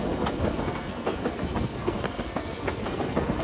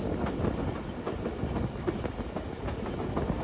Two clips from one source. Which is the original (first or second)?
second